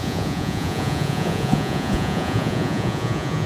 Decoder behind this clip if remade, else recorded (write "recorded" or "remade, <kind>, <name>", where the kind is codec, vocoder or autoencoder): remade, vocoder, Vocos